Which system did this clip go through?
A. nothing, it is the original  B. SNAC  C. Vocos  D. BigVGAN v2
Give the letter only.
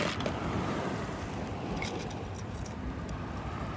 A